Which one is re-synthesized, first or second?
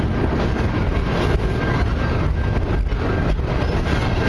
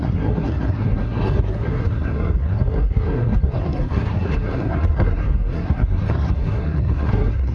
second